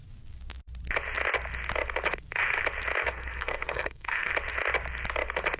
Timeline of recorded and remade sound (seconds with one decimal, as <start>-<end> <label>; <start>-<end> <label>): 0.0-3.0 recorded; 3.0-4.3 remade; 4.3-5.6 recorded